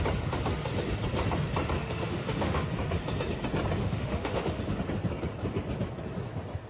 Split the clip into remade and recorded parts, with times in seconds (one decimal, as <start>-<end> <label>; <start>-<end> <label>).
0.0-1.8 recorded; 1.8-2.6 remade; 2.6-3.8 recorded; 3.8-4.6 remade; 4.6-6.7 recorded